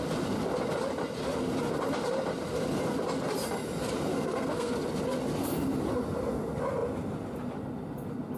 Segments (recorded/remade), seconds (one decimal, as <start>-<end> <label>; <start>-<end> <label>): 0.0-4.1 recorded; 4.1-4.7 remade; 4.7-8.4 recorded